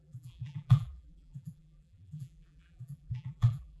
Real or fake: fake